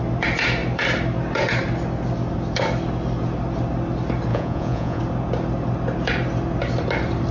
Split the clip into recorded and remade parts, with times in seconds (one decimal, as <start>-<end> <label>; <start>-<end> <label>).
0.0-4.3 recorded; 4.3-5.0 remade; 5.0-7.3 recorded